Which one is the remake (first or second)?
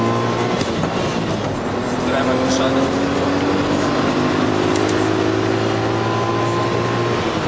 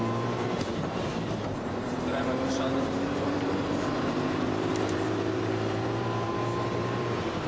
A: second